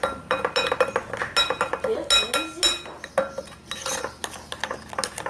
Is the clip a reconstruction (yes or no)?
no